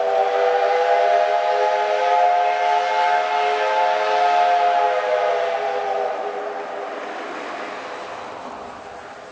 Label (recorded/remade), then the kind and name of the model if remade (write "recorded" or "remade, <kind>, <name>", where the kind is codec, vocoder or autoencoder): recorded